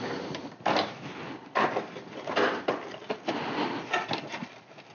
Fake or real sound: real